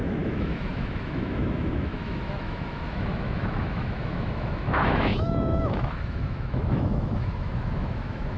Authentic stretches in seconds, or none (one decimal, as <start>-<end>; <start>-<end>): none